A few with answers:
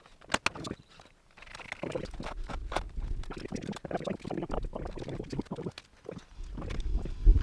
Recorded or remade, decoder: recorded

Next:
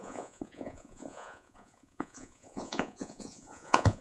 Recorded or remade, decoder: remade, vocoder, Vocos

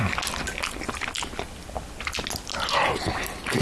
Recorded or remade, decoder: recorded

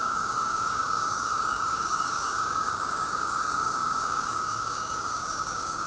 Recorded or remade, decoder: remade, codec, DAC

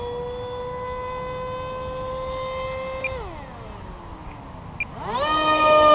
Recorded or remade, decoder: recorded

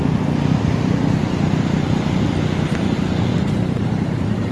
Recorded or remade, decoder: recorded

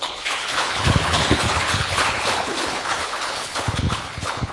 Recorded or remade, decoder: remade, codec, HILCodec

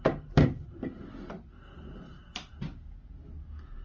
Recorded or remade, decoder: recorded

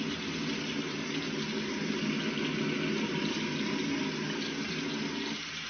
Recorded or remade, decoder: recorded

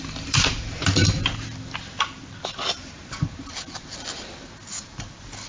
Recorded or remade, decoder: recorded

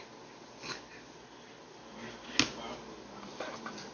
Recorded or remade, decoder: recorded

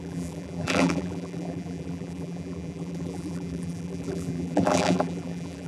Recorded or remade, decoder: remade, vocoder, BigVGAN v2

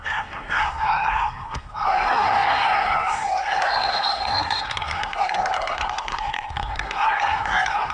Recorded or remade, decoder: remade, codec, SNAC